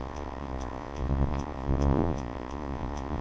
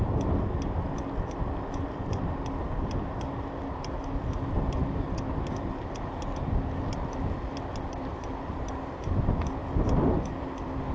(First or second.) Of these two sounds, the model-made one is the first